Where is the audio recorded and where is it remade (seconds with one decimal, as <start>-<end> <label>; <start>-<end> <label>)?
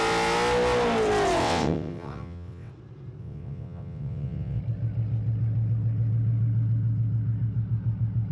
0.0-1.4 recorded; 1.4-2.7 remade; 2.7-3.2 recorded; 3.2-4.6 remade; 4.6-8.3 recorded